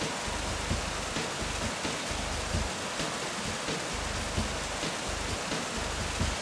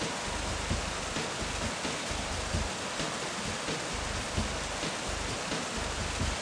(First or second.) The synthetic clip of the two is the second